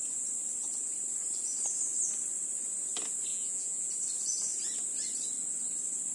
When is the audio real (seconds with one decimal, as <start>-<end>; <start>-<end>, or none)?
0.0-3.3; 3.9-6.1